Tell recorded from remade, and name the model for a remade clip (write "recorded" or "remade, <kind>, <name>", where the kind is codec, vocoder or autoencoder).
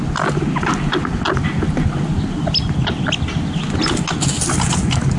recorded